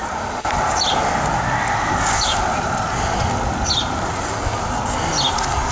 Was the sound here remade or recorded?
recorded